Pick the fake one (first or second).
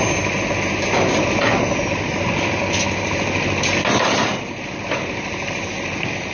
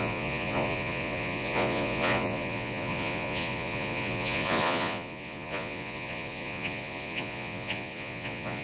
second